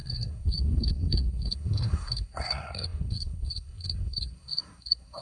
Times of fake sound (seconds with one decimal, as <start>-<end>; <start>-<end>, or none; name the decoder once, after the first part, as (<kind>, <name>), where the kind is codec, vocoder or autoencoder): 0.0-5.2 (codec, SNAC)